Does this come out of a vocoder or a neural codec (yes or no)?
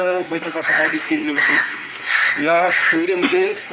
yes